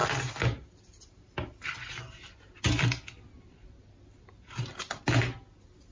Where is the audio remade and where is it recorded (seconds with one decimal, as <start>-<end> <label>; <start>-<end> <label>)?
0.0-5.9 recorded